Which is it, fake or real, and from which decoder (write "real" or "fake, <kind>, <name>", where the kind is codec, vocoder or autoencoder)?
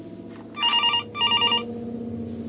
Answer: real